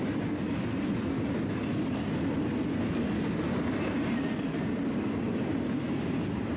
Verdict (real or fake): real